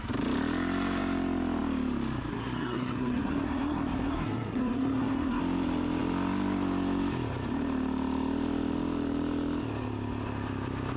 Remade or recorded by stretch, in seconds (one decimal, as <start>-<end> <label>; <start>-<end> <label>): 0.0-2.3 recorded; 2.3-5.4 remade; 5.4-11.0 recorded